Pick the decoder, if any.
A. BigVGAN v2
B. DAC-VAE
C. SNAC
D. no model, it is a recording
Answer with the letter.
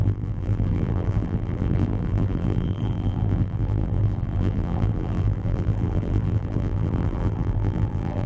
A